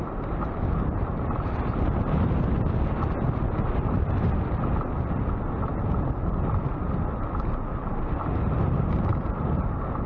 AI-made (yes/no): no